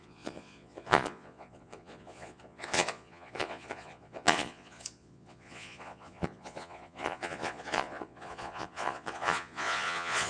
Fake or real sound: fake